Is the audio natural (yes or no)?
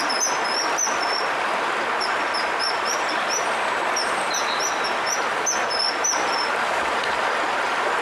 yes